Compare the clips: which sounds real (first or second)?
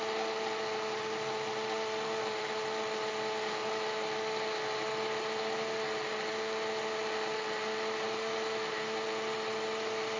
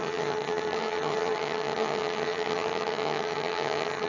first